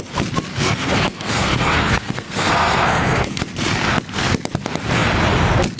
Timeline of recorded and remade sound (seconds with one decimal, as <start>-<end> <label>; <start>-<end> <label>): 0.0-0.5 recorded; 0.5-3.4 remade; 3.4-5.8 recorded

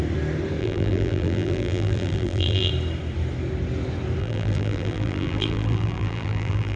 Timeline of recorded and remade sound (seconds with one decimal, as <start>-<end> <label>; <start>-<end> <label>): 0.0-0.6 recorded; 0.6-2.7 remade; 2.7-4.2 recorded; 4.2-6.8 remade

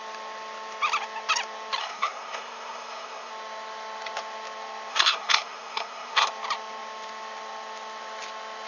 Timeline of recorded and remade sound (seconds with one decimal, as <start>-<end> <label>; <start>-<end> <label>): 0.0-1.8 recorded; 1.8-3.3 remade; 3.3-4.9 recorded; 4.9-6.3 remade; 6.3-8.7 recorded

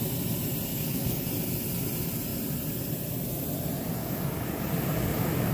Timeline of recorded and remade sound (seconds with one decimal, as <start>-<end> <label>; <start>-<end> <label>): 0.0-0.7 recorded; 0.7-1.3 remade; 1.3-4.0 recorded; 4.0-5.5 remade

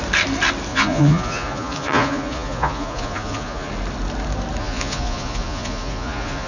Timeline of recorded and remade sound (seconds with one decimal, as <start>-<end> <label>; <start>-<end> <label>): 0.0-0.7 recorded; 0.7-3.7 remade; 3.7-4.6 recorded; 4.6-6.5 remade